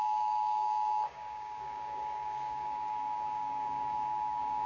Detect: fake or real fake